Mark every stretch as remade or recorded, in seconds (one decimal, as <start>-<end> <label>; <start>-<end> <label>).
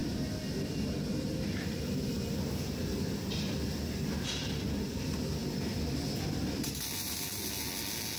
0.0-0.9 remade; 0.9-5.4 recorded; 5.4-7.5 remade; 7.5-8.2 recorded